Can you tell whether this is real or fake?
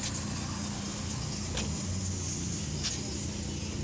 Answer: real